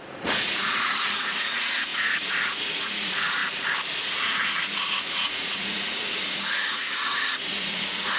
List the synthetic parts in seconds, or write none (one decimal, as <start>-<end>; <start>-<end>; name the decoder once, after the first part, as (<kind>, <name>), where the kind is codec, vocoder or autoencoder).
0.0-3.4 (vocoder, Vocos); 4.0-8.2